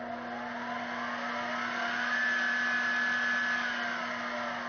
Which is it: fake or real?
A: real